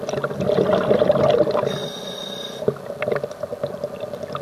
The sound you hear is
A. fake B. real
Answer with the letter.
B